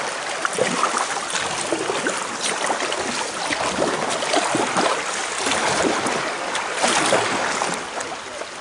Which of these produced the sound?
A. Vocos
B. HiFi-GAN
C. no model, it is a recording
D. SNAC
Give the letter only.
C